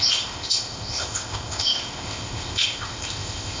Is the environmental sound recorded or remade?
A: remade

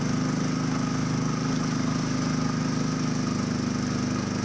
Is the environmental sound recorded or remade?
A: recorded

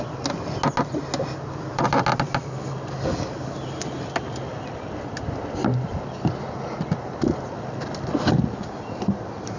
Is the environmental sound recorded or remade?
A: recorded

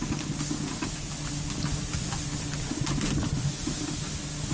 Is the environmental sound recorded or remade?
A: recorded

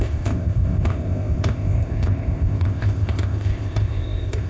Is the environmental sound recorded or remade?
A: remade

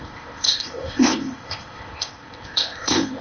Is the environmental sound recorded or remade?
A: remade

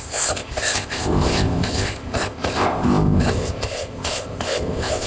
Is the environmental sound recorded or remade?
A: remade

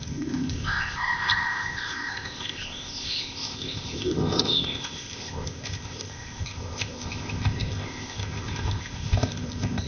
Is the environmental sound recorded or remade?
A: remade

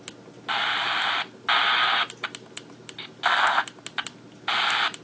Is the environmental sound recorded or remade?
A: recorded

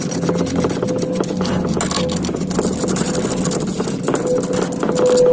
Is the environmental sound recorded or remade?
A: recorded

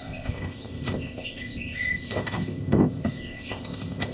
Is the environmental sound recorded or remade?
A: remade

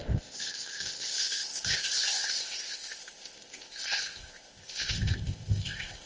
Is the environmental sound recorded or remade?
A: remade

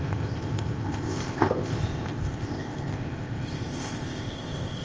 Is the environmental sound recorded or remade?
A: remade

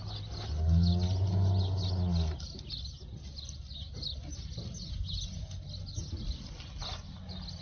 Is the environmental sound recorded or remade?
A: recorded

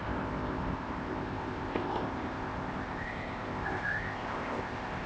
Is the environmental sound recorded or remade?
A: remade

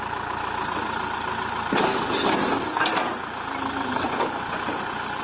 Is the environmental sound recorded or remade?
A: recorded